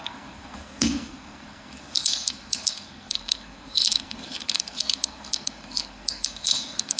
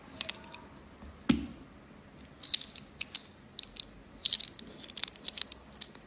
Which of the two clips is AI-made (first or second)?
first